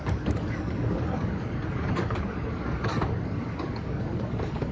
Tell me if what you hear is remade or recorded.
remade